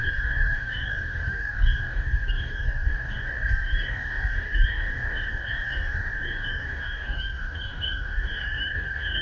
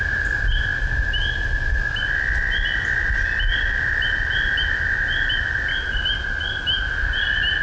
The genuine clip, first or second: second